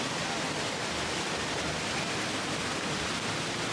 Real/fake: real